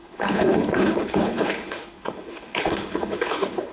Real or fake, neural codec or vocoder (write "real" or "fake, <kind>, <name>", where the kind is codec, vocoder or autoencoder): fake, codec, HILCodec